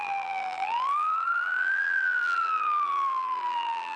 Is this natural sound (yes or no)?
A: no